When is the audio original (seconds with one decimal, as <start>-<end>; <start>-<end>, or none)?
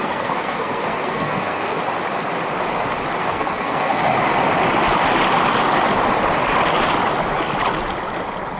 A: 1.8-3.2; 4.0-8.6